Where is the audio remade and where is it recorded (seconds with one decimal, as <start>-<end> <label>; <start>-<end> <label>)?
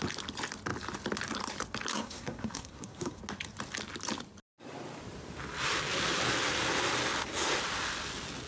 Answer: 0.0-1.9 recorded; 1.9-3.2 remade; 3.2-8.5 recorded